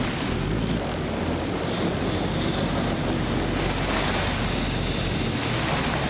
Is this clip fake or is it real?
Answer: real